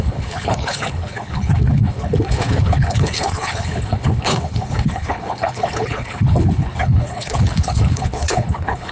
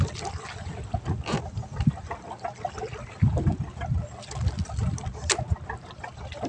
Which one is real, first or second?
second